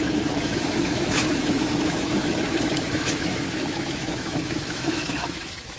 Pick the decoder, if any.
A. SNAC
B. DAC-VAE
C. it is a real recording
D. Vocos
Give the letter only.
B